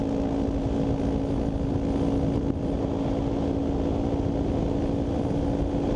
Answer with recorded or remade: recorded